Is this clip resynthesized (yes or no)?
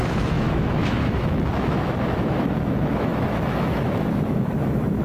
yes